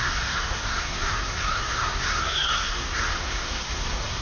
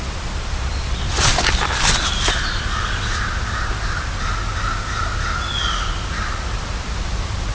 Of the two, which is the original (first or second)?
second